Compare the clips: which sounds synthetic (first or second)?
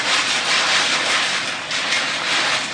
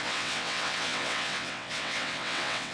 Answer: second